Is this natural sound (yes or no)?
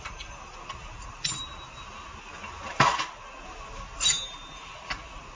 yes